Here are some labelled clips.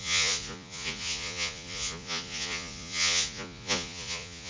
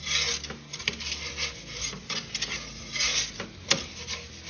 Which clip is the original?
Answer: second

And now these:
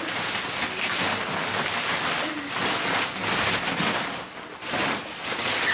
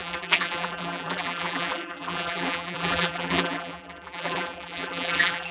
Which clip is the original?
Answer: first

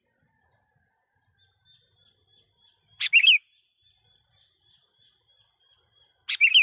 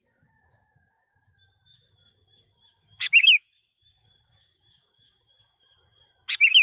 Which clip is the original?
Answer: first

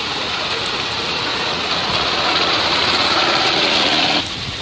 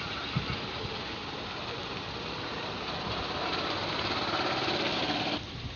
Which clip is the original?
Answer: second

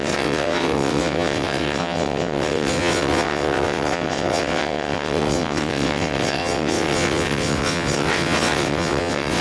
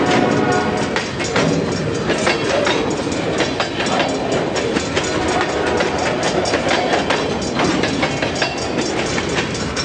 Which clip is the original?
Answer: second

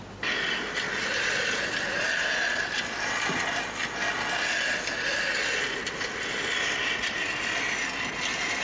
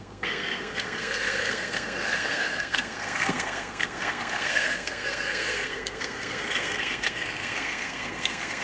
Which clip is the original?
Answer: first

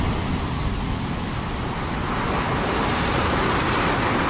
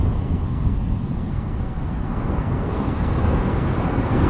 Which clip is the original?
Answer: first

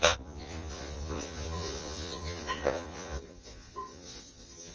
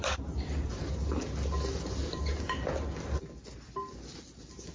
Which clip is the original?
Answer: second